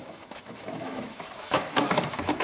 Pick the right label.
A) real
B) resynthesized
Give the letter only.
B